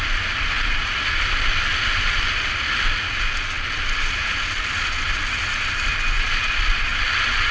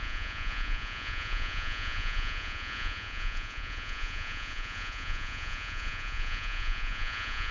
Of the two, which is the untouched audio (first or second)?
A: first